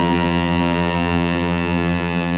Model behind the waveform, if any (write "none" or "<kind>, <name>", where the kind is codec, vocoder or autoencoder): vocoder, BigVGAN v2